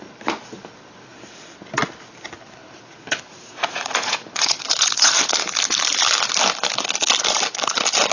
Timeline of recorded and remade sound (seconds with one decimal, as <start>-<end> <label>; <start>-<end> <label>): 0.0-2.6 recorded; 2.6-5.1 remade; 5.1-8.1 recorded